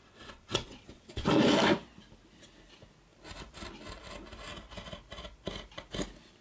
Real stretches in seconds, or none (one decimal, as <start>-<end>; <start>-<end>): 1.3-6.4